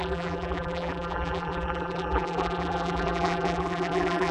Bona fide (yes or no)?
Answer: no